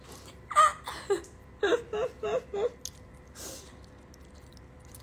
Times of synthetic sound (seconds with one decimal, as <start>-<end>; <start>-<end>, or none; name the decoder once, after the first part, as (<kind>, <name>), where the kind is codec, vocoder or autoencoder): none